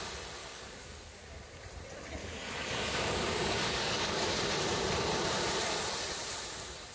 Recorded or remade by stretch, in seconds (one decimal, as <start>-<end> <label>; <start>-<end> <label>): 0.0-0.4 recorded; 0.4-1.2 remade; 1.2-2.2 recorded; 2.2-4.3 remade; 4.3-6.9 recorded